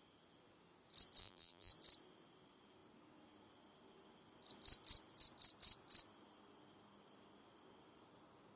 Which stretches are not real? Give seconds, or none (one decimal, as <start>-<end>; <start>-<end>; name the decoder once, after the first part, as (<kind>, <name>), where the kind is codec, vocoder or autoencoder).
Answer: 1.2-1.7 (vocoder, BigVGAN v2)